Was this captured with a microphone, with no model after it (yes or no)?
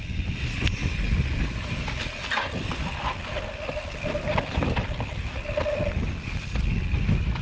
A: yes